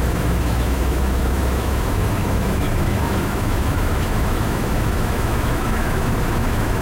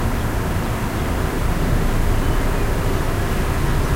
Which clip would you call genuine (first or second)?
second